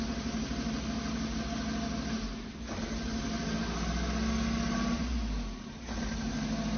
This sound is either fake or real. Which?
real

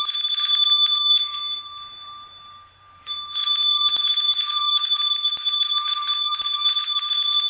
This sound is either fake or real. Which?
fake